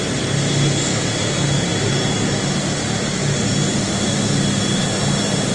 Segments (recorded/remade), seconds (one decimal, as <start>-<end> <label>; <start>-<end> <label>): 0.0-5.5 recorded

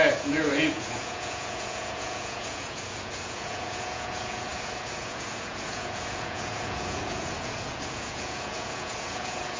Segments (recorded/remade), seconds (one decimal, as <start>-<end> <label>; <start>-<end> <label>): 0.0-9.6 remade

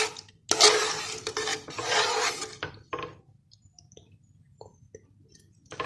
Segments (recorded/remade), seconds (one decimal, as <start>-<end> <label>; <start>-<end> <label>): 0.0-1.5 recorded; 1.5-2.7 remade; 2.7-3.4 recorded; 3.4-5.9 remade

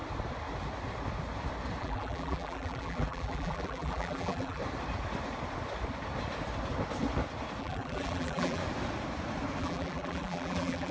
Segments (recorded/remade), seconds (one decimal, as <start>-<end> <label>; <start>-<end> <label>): 0.0-1.8 recorded; 1.8-4.6 remade; 4.6-7.6 recorded; 7.6-8.6 remade; 8.6-9.6 recorded; 9.6-10.9 remade

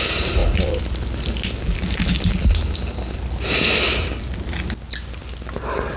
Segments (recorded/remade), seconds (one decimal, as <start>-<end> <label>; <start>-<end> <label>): 0.0-6.0 recorded